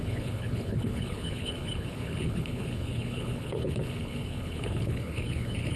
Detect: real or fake fake